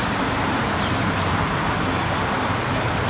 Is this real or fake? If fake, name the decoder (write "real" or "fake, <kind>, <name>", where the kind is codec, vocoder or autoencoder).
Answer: fake, vocoder, BigVGAN v2